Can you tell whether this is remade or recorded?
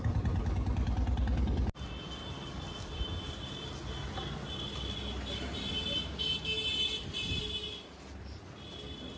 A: recorded